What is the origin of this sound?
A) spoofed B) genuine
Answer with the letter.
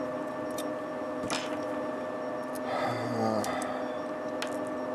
B